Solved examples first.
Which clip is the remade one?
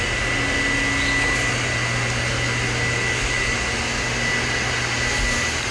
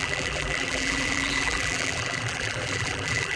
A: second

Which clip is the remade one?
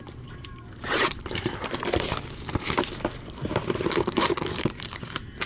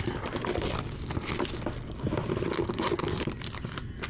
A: first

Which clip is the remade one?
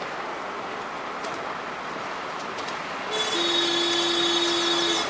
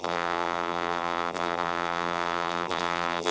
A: second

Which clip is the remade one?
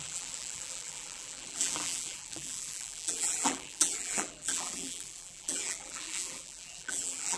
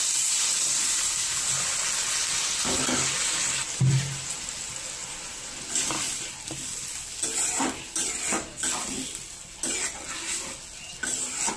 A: first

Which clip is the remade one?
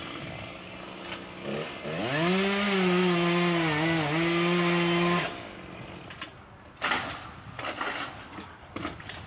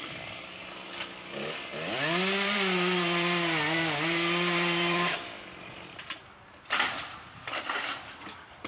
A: second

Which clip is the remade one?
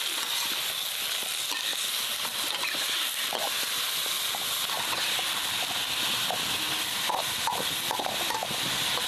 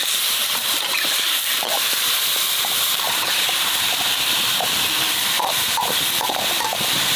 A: second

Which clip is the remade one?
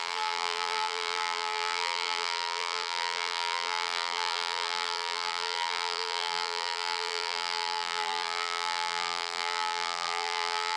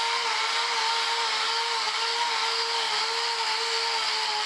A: first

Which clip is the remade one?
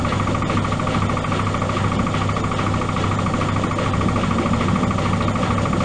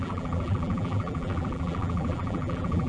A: second